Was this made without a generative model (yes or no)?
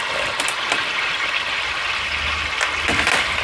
yes